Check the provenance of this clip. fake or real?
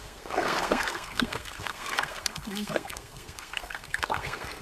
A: fake